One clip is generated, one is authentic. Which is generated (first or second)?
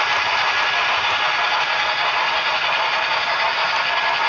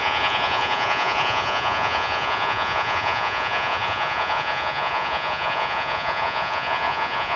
second